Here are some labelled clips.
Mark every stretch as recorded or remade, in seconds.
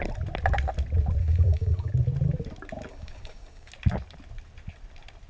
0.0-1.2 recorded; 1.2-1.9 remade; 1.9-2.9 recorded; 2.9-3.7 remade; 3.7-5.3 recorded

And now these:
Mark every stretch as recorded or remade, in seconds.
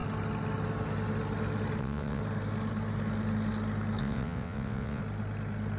0.0-1.8 recorded; 1.8-2.2 remade; 2.2-4.0 recorded; 4.0-5.0 remade; 5.0-5.8 recorded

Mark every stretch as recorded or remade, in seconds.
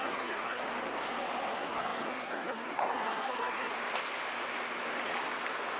0.0-0.6 remade; 0.6-1.5 recorded; 1.5-3.7 remade; 3.7-5.8 recorded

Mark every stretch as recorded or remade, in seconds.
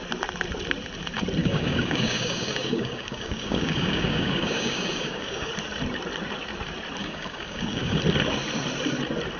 0.0-1.4 recorded; 1.4-5.5 remade; 5.5-7.0 recorded; 7.0-8.0 remade; 8.0-9.4 recorded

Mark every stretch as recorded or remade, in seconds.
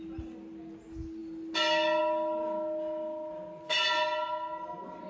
0.0-5.1 recorded